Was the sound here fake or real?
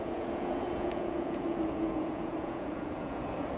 fake